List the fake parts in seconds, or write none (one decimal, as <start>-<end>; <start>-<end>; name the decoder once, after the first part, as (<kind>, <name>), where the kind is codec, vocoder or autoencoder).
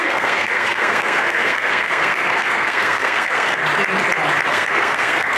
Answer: 0.0-3.6 (codec, SNAC); 4.5-5.4